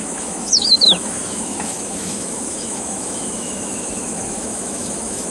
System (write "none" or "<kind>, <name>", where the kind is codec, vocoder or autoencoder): autoencoder, DAC-VAE